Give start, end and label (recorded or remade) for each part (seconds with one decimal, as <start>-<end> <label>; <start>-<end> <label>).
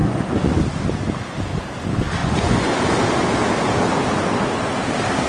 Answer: 0.0-0.6 remade; 0.6-2.2 recorded; 2.2-2.8 remade; 2.8-5.3 recorded